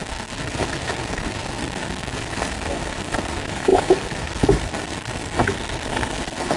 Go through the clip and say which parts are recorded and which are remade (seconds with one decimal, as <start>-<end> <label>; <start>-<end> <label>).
0.0-6.6 remade